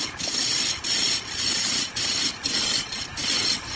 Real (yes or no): yes